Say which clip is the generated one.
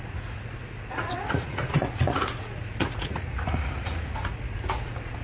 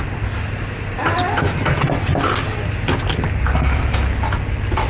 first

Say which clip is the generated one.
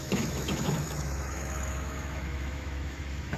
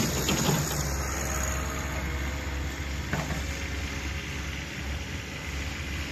first